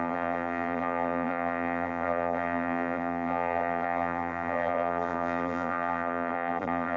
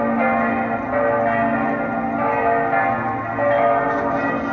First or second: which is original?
second